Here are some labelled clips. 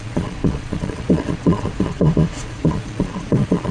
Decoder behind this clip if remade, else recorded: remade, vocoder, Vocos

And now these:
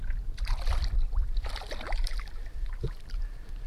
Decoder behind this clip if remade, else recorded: recorded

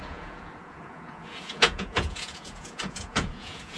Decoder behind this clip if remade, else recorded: remade, vocoder, Vocos